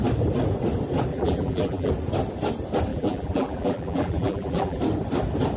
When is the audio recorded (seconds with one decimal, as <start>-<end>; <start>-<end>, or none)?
0.0-1.1; 1.9-2.9; 4.8-5.6